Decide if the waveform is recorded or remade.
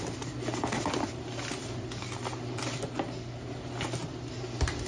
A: recorded